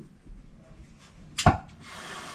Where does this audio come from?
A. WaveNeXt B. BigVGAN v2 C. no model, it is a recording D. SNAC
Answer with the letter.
C